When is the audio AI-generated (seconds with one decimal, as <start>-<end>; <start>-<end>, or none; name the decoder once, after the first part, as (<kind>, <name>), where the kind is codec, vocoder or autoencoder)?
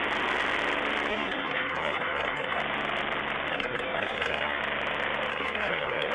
1.1-2.6 (codec, SNAC); 3.5-4.6; 5.3-6.1